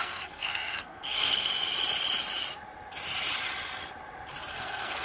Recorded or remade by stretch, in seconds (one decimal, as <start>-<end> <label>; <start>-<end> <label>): 0.0-1.5 remade; 1.5-4.5 recorded; 4.5-5.0 remade